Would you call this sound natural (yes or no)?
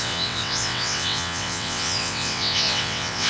no